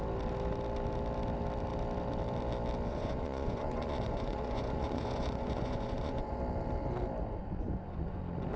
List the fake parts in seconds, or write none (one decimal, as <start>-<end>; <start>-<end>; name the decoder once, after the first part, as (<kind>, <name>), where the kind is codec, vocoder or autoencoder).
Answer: 2.9-6.4 (vocoder, Vocos); 7.4-8.2